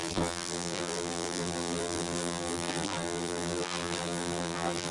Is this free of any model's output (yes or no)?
no